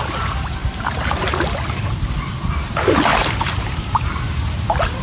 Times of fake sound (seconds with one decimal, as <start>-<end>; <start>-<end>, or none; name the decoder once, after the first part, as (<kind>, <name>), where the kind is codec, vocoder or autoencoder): 3.1-4.1 (vocoder, BigVGAN v2)